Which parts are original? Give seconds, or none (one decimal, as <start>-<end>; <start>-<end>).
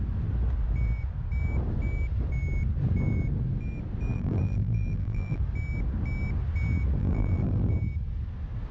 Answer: 0.0-4.1; 5.4-7.0; 7.7-8.7